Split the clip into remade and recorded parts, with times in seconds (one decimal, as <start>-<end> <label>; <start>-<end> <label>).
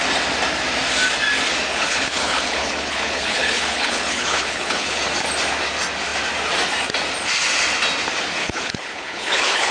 0.0-1.7 recorded; 1.7-5.0 remade; 5.0-8.4 recorded; 8.4-9.7 remade